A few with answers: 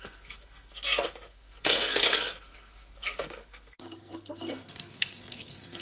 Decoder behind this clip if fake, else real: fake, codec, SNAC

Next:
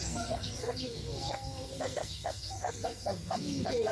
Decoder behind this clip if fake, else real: fake, codec, SNAC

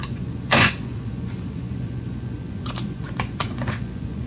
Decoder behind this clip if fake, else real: fake, vocoder, Vocos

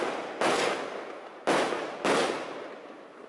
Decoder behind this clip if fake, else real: real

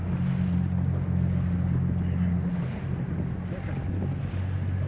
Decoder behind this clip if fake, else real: real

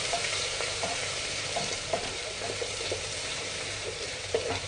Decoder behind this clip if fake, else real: fake, vocoder, BigVGAN v2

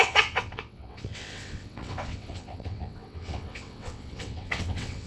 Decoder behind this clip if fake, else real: fake, vocoder, WaveNeXt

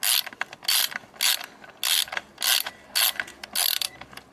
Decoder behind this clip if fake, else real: real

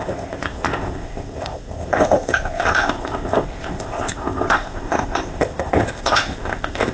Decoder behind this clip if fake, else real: fake, codec, ZipCodec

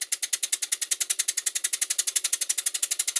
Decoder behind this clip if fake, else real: real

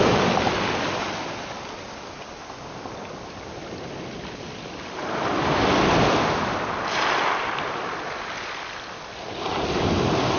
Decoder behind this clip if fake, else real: real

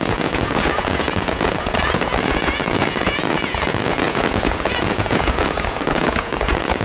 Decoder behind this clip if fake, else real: fake, vocoder, Vocos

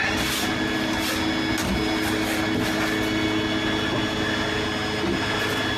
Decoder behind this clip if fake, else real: real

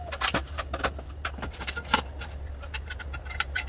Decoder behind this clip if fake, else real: real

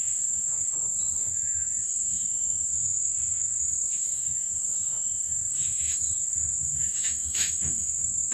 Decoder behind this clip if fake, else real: fake, autoencoder, DAC-VAE